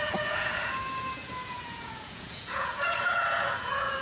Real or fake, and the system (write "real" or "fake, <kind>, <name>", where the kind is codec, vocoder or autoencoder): fake, vocoder, Vocos